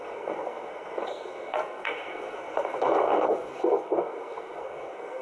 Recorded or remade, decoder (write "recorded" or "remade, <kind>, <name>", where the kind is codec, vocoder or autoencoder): remade, codec, SNAC